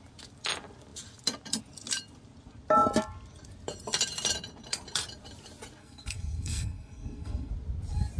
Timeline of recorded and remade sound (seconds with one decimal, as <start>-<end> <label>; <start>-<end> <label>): 0.0-5.8 recorded; 5.8-7.5 remade; 7.5-8.2 recorded